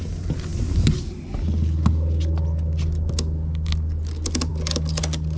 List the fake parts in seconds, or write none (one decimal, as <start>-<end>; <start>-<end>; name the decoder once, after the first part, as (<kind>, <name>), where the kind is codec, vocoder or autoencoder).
none